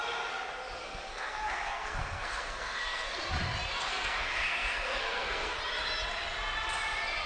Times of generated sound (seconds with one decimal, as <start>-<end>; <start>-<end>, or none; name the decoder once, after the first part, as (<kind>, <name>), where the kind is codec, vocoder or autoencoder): 0.8-3.2 (codec, SNAC); 3.8-5.6